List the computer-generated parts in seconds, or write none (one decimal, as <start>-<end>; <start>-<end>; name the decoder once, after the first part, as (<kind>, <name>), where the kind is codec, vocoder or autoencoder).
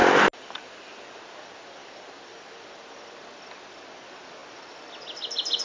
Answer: none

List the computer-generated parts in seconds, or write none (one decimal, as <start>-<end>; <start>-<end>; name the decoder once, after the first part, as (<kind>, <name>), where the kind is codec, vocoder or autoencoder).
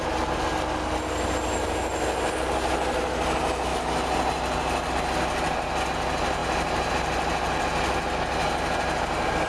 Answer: none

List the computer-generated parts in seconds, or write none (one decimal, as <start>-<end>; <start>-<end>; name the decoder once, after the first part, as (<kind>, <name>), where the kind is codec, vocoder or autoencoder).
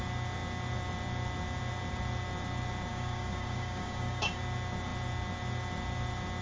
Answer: 2.9-4.4 (codec, DAC)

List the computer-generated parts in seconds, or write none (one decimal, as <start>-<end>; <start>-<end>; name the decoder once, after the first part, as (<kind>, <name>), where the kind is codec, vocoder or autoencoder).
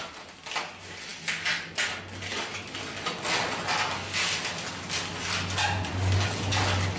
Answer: none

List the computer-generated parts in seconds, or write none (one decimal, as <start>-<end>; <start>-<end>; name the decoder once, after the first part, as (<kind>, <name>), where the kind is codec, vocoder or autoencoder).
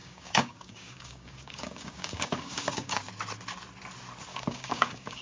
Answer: 0.0-3.1 (codec, DAC); 4.3-5.2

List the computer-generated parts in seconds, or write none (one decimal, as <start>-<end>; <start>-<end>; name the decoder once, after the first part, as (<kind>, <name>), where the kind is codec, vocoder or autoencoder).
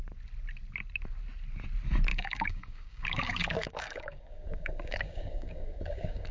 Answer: 2.1-6.3 (codec, DAC)